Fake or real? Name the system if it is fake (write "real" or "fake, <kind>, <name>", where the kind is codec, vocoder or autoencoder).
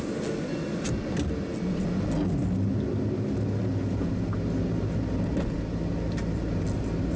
real